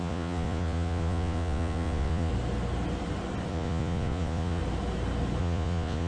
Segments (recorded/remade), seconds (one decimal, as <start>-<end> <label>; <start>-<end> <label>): 0.0-2.3 remade; 2.3-3.5 recorded; 3.5-4.6 remade; 4.6-5.4 recorded; 5.4-6.1 remade